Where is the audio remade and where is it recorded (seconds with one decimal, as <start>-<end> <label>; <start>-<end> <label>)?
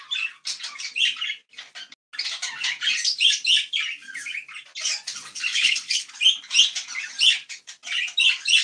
0.0-5.5 recorded; 5.5-6.1 remade; 6.1-8.6 recorded